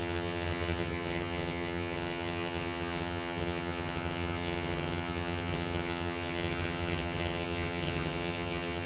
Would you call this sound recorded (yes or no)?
no